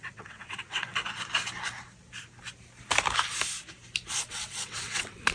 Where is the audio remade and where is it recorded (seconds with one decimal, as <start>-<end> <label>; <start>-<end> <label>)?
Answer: 0.0-0.9 remade; 0.9-4.1 recorded; 4.1-5.3 remade